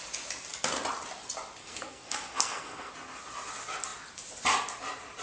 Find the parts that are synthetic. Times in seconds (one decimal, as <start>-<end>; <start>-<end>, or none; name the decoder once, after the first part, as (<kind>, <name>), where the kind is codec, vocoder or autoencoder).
1.6-2.9 (codec, SNAC)